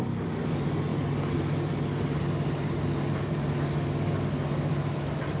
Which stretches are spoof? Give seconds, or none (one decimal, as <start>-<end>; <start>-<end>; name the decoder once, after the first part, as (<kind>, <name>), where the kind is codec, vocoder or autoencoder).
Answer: none